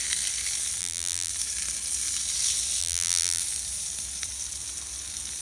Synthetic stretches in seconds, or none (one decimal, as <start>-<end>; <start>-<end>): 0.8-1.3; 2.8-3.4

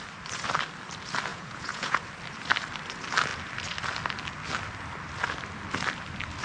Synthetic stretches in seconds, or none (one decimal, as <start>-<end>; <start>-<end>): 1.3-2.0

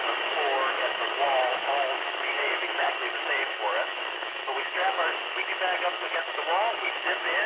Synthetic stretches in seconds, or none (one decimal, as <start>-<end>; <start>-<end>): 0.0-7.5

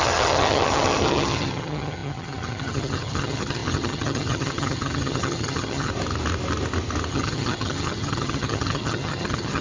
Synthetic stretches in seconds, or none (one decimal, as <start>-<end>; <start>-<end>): 0.0-5.9; 7.1-9.6

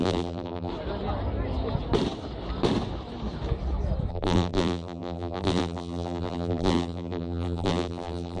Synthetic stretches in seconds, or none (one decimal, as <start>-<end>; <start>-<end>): 0.0-0.7; 4.1-8.4

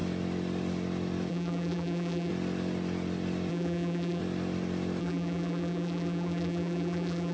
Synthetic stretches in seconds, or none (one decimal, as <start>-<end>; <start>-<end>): 1.3-2.3; 3.5-4.2; 5.0-7.3

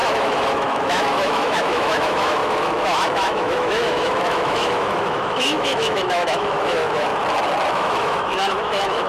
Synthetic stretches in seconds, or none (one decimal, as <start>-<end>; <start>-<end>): 0.0-7.1; 7.7-9.1

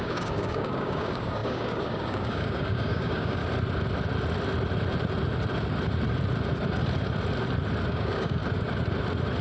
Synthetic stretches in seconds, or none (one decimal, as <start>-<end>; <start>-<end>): 0.0-3.4; 7.9-8.4